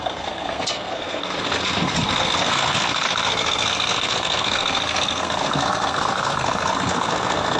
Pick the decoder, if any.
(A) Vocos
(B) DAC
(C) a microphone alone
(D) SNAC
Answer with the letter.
D